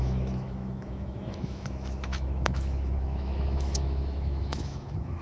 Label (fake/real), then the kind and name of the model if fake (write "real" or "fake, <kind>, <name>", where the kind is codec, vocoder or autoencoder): fake, autoencoder, DAC-VAE